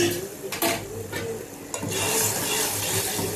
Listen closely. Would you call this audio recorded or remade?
recorded